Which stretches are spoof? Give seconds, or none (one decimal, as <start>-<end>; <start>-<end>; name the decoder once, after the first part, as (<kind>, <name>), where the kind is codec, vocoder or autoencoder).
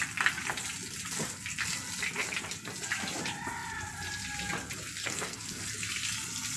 5.0-5.6 (codec, SNAC)